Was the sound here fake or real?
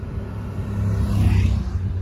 real